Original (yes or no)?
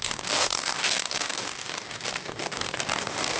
no